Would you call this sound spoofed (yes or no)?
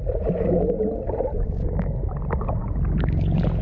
no